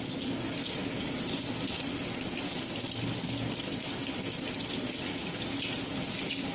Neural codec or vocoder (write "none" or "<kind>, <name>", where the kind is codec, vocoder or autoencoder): none